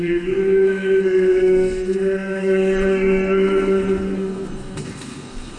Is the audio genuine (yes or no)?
no